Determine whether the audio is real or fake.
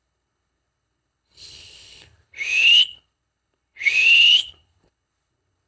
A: fake